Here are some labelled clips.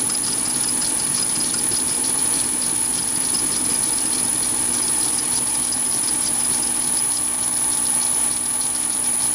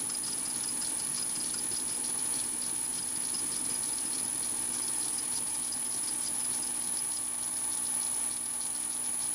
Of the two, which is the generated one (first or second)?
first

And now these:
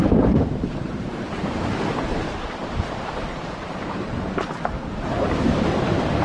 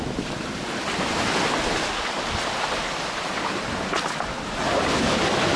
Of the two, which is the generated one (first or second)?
first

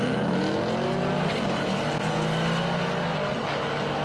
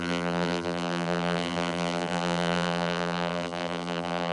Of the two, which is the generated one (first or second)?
second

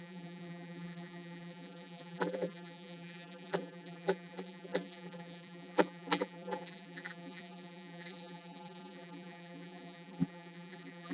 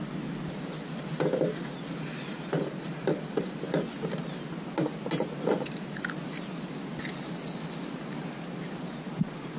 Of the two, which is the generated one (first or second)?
first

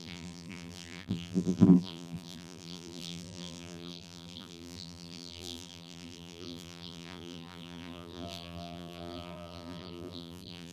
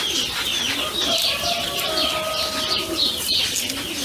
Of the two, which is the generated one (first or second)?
first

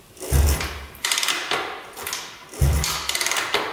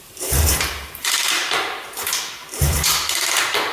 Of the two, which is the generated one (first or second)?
second